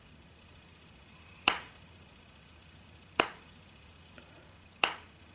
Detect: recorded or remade remade